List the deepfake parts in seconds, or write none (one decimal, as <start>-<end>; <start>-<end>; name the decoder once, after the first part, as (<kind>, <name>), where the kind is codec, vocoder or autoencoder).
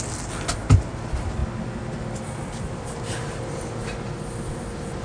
none